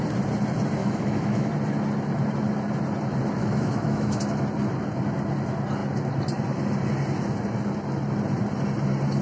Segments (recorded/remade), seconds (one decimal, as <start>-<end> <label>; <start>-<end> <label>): 0.0-0.8 recorded; 0.8-1.5 remade; 1.5-3.4 recorded; 3.4-4.2 remade; 4.2-9.2 recorded

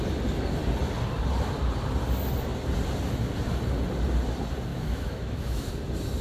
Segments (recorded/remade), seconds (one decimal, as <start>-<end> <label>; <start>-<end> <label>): 0.0-4.7 recorded; 4.7-5.7 remade; 5.7-6.2 recorded

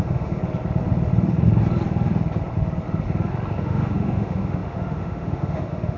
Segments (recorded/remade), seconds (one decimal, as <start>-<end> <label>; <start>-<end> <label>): 0.0-0.4 remade; 0.4-3.6 recorded; 3.6-6.0 remade

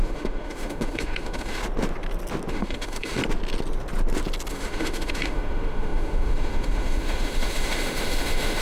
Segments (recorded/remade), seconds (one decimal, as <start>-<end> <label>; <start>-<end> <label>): 0.0-1.6 remade; 1.6-2.5 recorded; 2.5-3.2 remade; 3.2-4.5 recorded; 4.5-8.6 remade

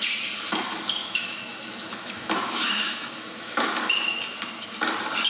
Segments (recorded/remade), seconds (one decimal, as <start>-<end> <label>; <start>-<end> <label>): 0.0-1.0 recorded; 1.0-4.2 remade; 4.2-5.3 recorded